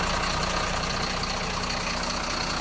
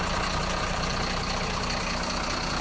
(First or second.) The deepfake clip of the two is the second